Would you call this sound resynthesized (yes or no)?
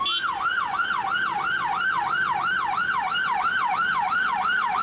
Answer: no